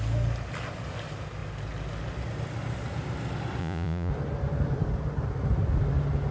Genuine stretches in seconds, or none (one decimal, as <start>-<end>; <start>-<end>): 0.0-3.6; 4.1-6.3